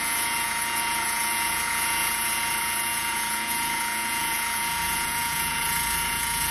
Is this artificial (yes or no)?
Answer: yes